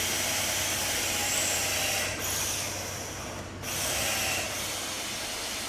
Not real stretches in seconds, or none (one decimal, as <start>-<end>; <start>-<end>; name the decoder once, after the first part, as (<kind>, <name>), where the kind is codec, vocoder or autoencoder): none